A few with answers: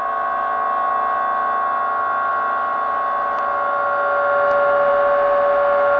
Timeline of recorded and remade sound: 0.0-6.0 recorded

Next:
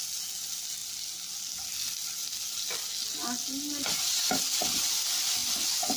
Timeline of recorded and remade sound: 0.0-6.0 recorded

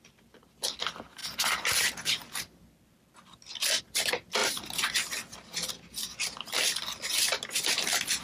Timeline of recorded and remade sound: 0.0-8.2 recorded

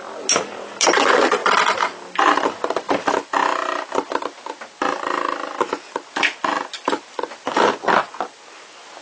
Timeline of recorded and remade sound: 0.0-9.0 recorded

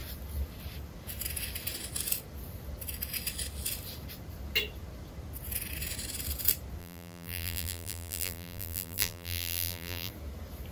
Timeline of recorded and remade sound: 0.0-6.8 recorded; 6.8-10.1 remade; 10.1-10.7 recorded

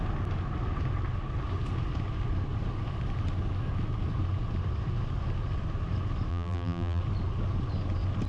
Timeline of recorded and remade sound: 0.0-6.3 recorded; 6.3-7.0 remade; 7.0-8.3 recorded

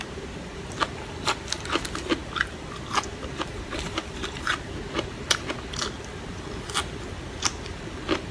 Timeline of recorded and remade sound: 0.0-3.5 recorded; 3.5-4.8 remade; 4.8-8.3 recorded